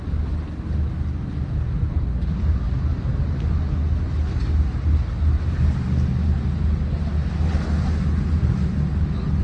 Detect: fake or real real